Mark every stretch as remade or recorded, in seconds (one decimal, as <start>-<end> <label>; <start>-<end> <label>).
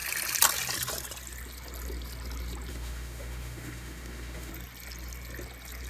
0.0-2.7 recorded; 2.7-4.5 remade; 4.5-5.9 recorded